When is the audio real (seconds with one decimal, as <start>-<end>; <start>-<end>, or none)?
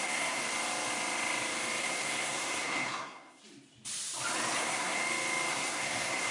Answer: 0.4-1.8; 3.4-4.6; 5.0-5.5